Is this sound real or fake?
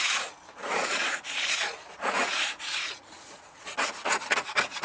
fake